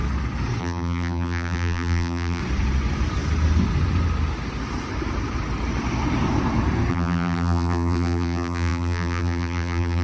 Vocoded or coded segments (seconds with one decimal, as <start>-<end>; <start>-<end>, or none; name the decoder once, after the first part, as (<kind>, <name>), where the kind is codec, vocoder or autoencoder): 0.6-2.4 (vocoder, BigVGAN v2); 6.9-10.0